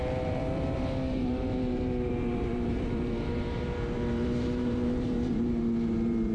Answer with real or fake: fake